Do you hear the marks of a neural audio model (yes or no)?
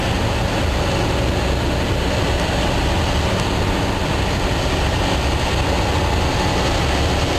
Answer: no